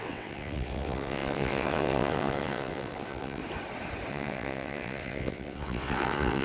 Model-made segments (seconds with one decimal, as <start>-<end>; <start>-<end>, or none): 0.0-3.4; 4.1-6.4